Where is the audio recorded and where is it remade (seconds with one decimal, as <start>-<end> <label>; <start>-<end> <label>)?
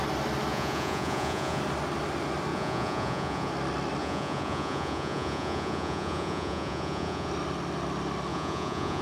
0.0-0.5 recorded; 0.5-1.6 remade; 1.6-2.5 recorded; 2.5-3.5 remade; 3.5-4.0 recorded; 4.0-7.3 remade; 7.3-8.3 recorded; 8.3-9.0 remade